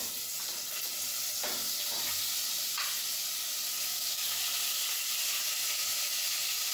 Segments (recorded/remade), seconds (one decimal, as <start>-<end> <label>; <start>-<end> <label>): 0.0-3.9 recorded; 3.9-4.4 remade; 4.4-6.7 recorded

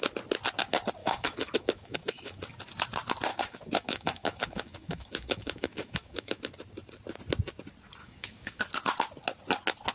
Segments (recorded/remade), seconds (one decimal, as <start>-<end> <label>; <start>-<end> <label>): 0.0-1.0 recorded; 1.0-2.4 remade; 2.4-3.3 recorded; 3.3-6.4 remade; 6.4-8.0 recorded; 8.0-8.6 remade; 8.6-9.9 recorded

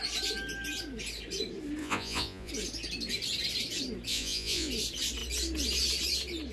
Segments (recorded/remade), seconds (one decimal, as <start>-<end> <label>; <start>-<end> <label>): 0.0-1.8 recorded; 1.8-2.5 remade; 2.5-4.1 recorded; 4.1-4.7 remade; 4.7-6.5 recorded

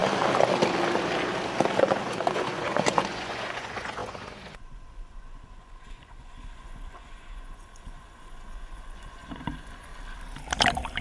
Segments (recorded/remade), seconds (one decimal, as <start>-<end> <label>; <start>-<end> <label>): 0.0-1.8 recorded; 1.8-9.9 remade; 9.9-11.0 recorded